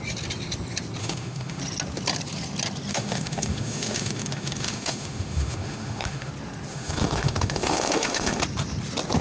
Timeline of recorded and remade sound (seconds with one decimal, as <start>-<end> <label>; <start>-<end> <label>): 0.0-1.0 recorded; 1.0-1.6 remade; 1.6-2.9 recorded; 2.9-6.3 remade; 6.3-6.7 recorded; 6.7-8.4 remade; 8.4-9.2 recorded